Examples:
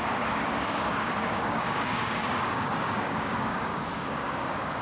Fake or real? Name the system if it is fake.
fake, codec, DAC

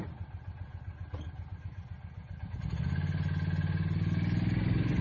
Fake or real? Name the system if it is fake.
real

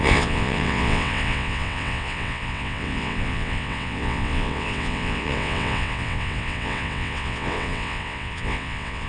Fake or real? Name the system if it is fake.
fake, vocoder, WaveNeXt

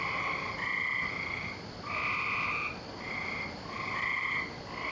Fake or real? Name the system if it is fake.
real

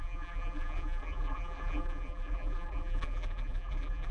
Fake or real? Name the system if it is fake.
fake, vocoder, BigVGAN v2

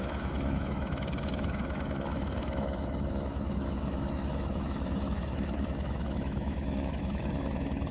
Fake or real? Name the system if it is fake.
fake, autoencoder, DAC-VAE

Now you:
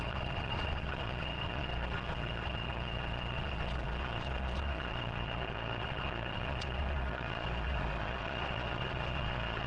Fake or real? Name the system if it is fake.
fake, vocoder, Vocos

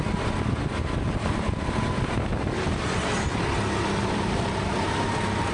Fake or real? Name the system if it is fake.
real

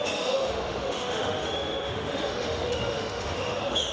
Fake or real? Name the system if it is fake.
fake, autoencoder, DAC-VAE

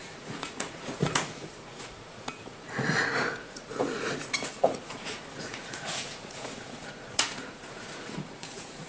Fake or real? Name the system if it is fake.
fake, vocoder, Vocos